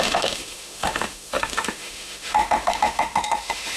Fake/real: fake